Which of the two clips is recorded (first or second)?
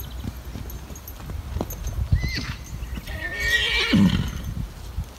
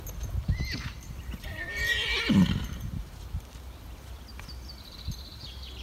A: first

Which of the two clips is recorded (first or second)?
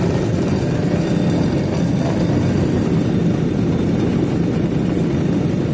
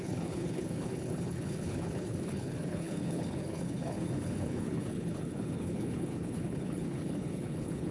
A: first